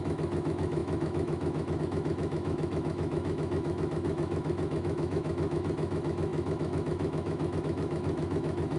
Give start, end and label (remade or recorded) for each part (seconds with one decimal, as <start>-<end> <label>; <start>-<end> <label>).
0.0-8.8 remade